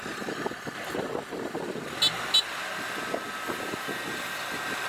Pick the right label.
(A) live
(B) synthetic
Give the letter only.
A